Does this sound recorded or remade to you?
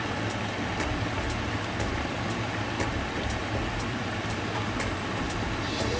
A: remade